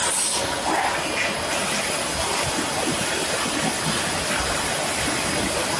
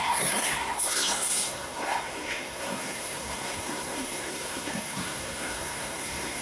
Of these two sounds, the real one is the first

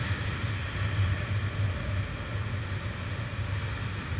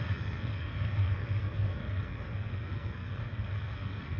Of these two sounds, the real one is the first